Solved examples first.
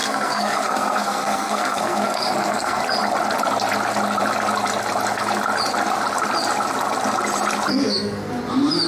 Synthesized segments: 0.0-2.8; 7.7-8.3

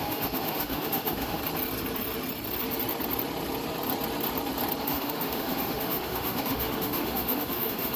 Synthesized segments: 0.0-1.4; 4.8-8.0

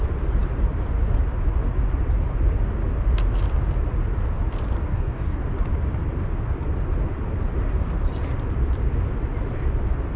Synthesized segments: 4.9-5.4

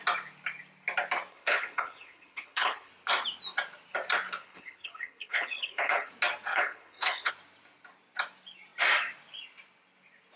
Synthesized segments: 1.3-2.9; 4.4-6.1; 6.5-7.3

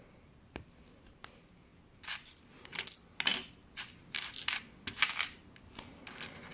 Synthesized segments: none

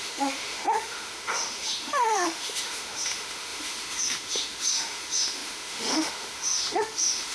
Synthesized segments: 0.0-7.3

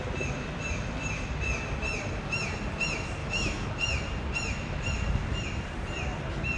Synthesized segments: 3.2-3.7

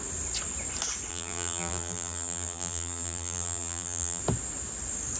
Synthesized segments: 1.1-4.2